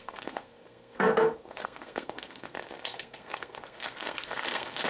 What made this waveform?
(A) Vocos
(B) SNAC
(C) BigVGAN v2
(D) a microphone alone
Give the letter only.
B